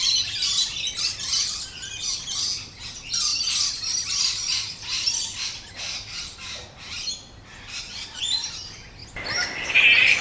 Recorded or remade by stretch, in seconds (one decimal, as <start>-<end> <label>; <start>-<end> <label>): 0.0-10.2 recorded